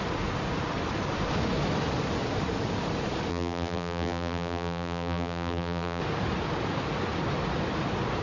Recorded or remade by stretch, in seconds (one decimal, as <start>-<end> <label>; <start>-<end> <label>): 0.0-3.3 recorded; 3.3-6.0 remade; 6.0-8.2 recorded